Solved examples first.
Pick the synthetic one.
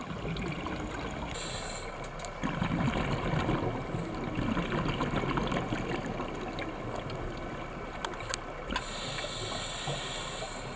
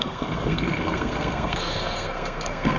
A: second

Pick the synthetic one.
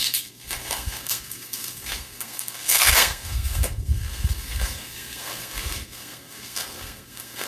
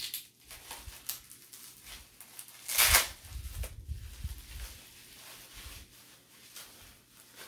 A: first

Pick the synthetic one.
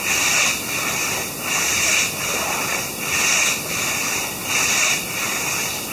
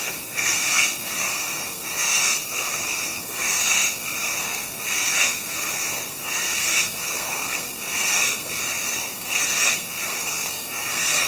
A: second